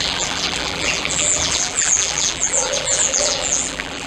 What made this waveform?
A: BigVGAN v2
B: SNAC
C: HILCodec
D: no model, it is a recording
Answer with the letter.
A